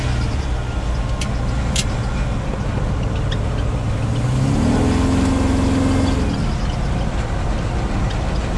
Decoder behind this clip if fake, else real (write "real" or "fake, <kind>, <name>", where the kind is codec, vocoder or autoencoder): real